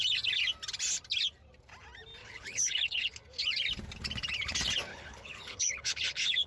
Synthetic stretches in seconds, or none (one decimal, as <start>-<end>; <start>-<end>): 2.2-3.2; 4.9-6.5

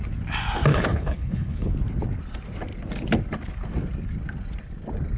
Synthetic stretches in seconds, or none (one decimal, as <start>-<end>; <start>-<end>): 0.7-1.7